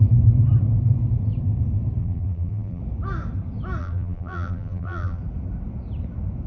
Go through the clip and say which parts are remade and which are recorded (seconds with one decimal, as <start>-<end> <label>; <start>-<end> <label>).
0.0-2.0 recorded; 2.0-2.8 remade; 2.8-3.8 recorded; 3.8-5.2 remade; 5.2-6.5 recorded